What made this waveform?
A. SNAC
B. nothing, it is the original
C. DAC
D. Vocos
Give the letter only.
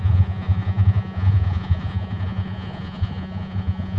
D